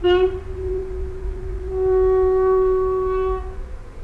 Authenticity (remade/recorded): remade